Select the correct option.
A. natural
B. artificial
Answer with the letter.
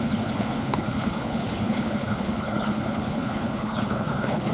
B